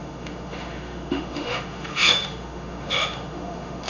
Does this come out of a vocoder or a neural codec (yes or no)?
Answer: yes